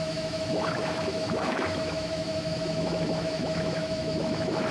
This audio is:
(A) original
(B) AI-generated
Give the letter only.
B